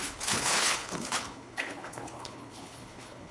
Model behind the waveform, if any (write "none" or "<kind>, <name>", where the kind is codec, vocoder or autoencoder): codec, HILCodec